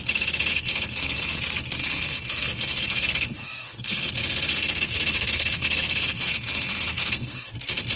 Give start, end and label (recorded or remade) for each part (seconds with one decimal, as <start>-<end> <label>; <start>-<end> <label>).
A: 0.0-0.5 recorded; 0.5-1.4 remade; 1.4-1.8 recorded; 1.8-4.1 remade; 4.1-4.5 recorded; 4.5-7.5 remade; 7.5-8.0 recorded